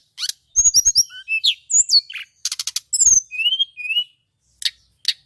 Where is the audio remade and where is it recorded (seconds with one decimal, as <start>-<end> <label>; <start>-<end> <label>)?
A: 0.0-5.3 recorded